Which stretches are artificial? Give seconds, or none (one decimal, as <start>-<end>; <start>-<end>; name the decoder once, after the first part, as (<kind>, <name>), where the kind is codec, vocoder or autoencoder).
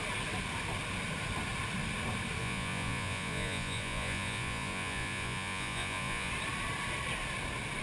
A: 2.4-6.3 (vocoder, Vocos)